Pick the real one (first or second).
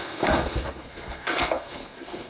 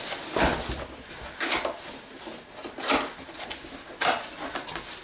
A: second